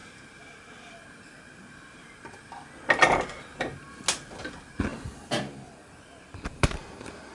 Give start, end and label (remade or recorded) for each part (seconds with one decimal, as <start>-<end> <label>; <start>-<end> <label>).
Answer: 0.0-7.3 recorded